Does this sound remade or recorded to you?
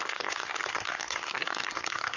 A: remade